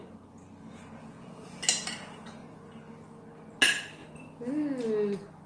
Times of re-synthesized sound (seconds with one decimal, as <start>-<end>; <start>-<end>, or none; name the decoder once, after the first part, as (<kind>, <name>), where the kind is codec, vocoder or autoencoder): none